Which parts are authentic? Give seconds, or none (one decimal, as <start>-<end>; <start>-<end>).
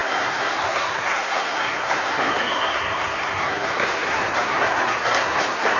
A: none